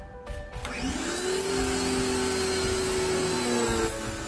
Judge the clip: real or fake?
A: real